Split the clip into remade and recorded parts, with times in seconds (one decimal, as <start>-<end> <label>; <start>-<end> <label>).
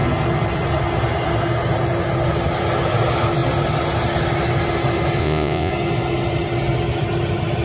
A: 0.0-5.2 recorded; 5.2-5.7 remade; 5.7-7.6 recorded